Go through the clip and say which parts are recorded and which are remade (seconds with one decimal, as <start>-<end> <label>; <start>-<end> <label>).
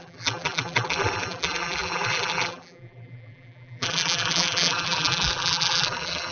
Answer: 0.0-6.3 remade